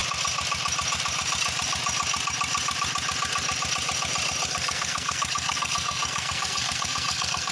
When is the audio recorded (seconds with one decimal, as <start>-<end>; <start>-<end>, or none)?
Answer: 0.0-4.5